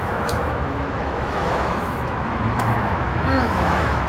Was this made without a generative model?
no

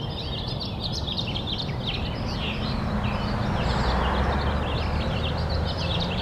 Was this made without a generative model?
yes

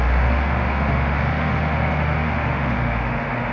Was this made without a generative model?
no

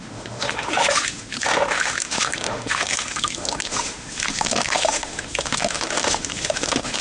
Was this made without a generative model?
no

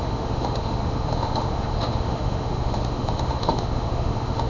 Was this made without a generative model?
no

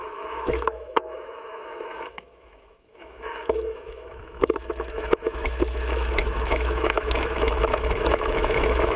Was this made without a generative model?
no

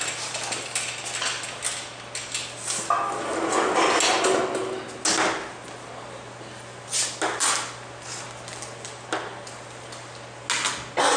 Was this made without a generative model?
yes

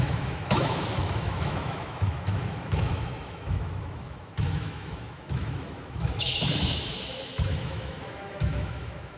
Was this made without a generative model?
no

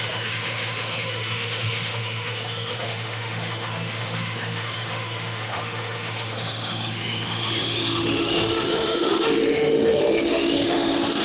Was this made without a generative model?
no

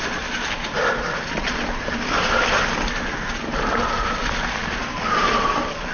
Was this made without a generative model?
yes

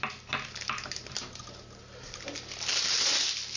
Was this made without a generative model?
yes